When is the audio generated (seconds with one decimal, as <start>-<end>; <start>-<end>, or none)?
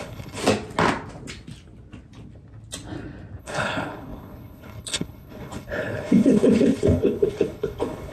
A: 0.0-0.4; 3.4-8.1